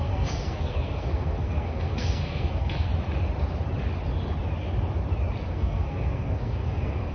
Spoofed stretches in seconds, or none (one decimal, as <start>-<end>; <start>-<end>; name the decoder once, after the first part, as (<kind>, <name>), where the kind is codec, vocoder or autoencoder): 0.0-2.9 (codec, SNAC); 5.5-7.1